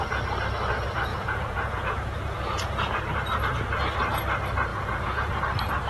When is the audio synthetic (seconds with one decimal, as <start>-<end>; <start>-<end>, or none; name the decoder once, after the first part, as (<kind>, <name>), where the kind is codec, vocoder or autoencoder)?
1.1-3.0 (vocoder, Vocos); 4.7-5.4